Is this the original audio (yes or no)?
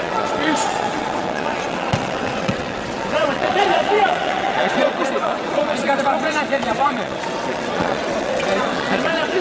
no